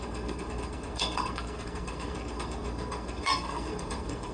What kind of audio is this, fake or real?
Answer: fake